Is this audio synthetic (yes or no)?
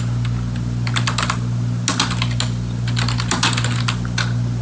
no